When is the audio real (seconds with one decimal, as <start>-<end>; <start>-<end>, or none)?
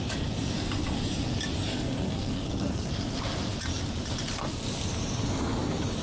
0.0-1.7; 2.9-6.0